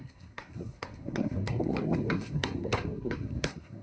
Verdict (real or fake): fake